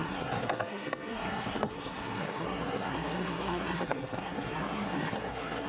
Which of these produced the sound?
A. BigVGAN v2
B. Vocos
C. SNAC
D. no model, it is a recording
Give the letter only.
C